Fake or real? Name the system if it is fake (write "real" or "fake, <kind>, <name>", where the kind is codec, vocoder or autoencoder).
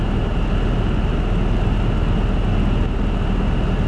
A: real